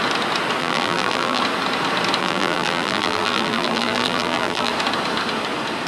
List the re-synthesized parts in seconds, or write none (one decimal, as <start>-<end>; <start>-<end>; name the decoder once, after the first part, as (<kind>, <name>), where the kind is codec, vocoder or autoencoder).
0.6-1.4 (vocoder, BigVGAN v2); 2.2-4.7